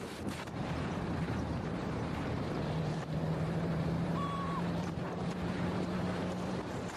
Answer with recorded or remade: remade